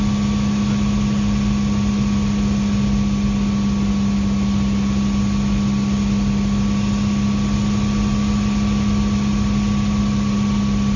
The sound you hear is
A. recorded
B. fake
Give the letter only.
A